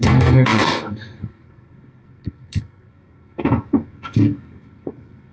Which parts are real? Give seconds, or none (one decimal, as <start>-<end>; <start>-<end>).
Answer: none